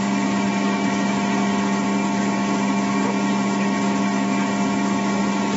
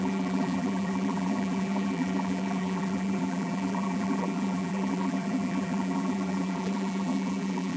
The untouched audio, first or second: first